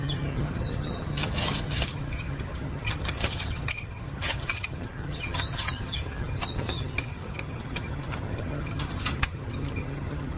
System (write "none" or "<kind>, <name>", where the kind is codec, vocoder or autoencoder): vocoder, HiFi-GAN